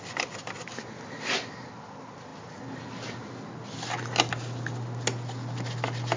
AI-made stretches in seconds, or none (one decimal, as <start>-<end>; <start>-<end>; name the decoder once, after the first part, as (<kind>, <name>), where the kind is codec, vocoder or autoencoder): none